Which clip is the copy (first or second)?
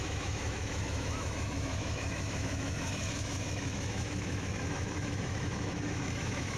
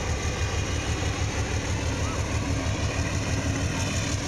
first